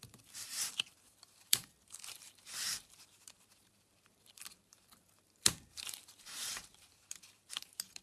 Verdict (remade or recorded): remade